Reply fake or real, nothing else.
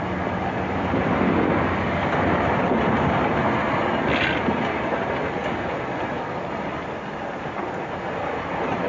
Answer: real